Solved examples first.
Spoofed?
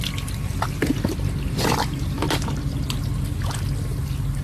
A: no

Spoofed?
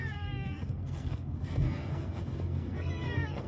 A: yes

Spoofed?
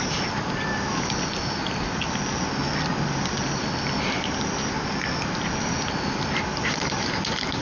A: no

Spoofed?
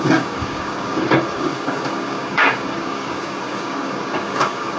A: yes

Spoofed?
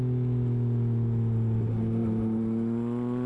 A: no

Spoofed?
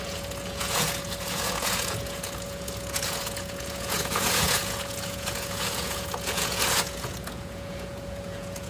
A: yes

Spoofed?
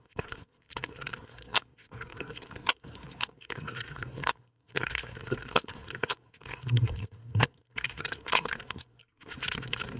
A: yes